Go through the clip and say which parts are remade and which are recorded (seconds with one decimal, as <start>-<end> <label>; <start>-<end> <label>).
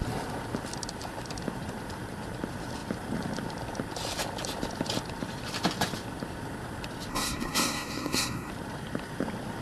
0.0-7.1 recorded; 7.1-8.5 remade; 8.5-9.6 recorded